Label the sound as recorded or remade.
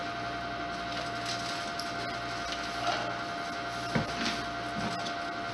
recorded